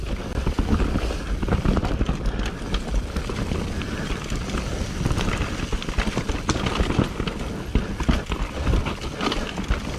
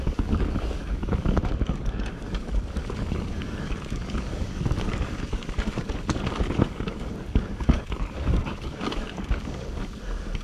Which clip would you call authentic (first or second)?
first